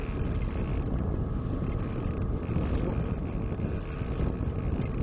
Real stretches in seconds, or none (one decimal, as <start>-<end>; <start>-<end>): 0.0-5.0

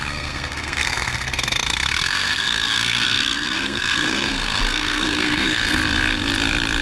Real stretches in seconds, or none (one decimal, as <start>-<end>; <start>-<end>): 5.8-6.8

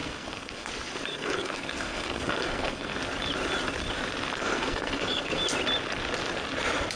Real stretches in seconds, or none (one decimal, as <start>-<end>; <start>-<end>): 0.7-1.1; 3.0-4.4; 5.4-7.0

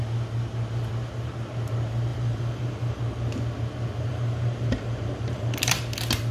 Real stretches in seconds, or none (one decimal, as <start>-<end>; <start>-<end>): 0.0-2.1; 3.0-4.1; 5.8-6.3

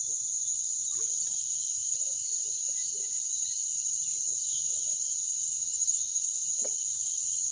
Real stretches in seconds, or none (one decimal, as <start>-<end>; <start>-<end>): 0.0-5.6; 6.2-7.5